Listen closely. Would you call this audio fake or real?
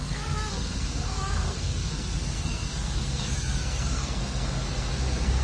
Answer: fake